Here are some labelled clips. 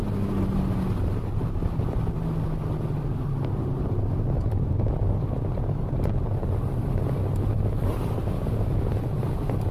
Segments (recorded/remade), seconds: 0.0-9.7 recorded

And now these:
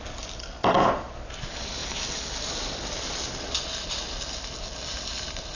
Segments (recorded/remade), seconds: 0.0-5.5 recorded

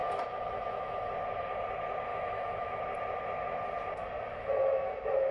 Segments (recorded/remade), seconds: 0.0-1.1 remade; 1.1-2.1 recorded; 2.1-2.8 remade; 2.8-4.3 recorded; 4.3-5.3 remade

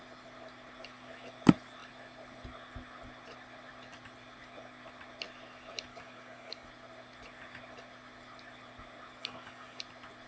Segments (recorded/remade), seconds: 0.0-5.9 recorded; 5.9-6.7 remade; 6.7-9.2 recorded; 9.2-9.8 remade; 9.8-10.3 recorded

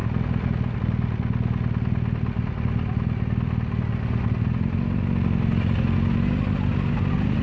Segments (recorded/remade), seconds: 0.0-7.4 recorded

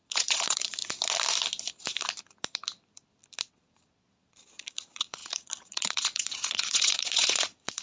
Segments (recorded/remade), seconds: 0.0-0.8 remade; 0.8-3.5 recorded; 3.5-7.8 remade

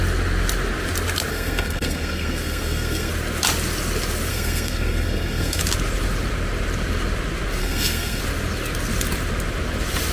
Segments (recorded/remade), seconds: 0.0-1.3 recorded; 1.3-3.1 remade; 3.1-4.3 recorded; 4.3-5.6 remade; 5.6-7.6 recorded; 7.6-8.2 remade; 8.2-10.1 recorded

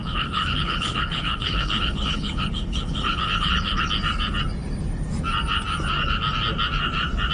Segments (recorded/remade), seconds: 0.0-3.9 remade; 3.9-7.3 recorded